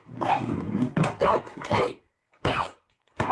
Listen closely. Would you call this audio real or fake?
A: fake